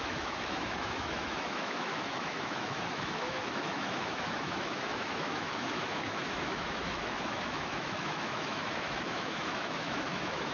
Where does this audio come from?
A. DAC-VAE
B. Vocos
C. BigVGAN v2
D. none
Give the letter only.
A